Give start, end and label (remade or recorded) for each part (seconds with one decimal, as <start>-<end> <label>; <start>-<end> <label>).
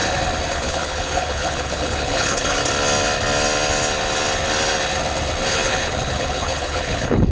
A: 0.0-0.5 recorded; 0.5-2.6 remade; 2.6-5.5 recorded; 5.5-7.3 remade